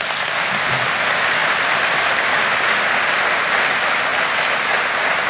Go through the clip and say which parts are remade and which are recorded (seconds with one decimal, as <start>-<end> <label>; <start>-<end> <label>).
0.0-5.3 recorded